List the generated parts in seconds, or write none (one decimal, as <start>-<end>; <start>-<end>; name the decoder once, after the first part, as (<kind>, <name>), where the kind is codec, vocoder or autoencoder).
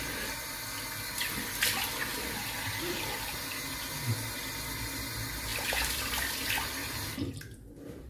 5.5-6.3 (vocoder, BigVGAN v2); 6.8-8.1